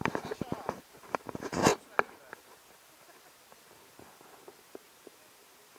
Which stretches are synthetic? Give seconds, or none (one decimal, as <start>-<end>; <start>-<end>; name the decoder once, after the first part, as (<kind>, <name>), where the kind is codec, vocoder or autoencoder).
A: 0.0-1.7 (vocoder, BigVGAN v2); 2.3-5.8